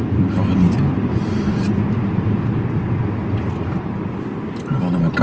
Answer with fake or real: real